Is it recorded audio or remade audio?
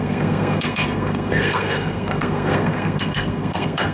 remade